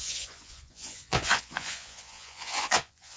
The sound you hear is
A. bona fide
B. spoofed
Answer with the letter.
B